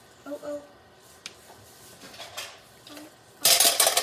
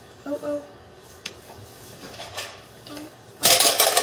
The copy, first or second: second